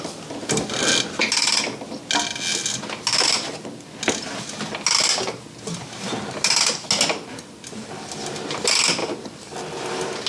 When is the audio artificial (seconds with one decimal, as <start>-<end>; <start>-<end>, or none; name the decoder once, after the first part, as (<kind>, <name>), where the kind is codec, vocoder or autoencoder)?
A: none